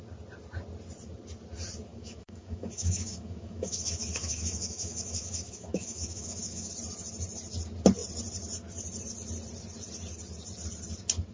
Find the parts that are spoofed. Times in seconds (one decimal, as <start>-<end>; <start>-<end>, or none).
1.9-6.7